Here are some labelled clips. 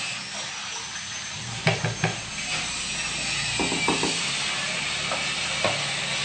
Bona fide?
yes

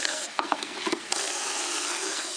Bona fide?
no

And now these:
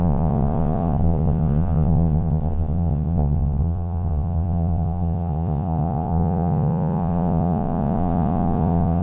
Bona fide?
no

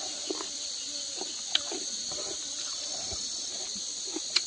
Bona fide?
yes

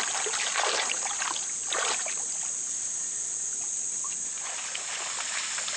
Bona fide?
yes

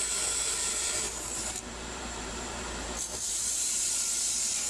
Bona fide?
no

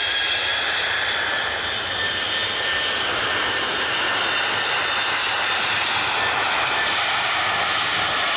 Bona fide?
yes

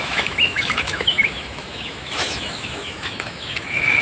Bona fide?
no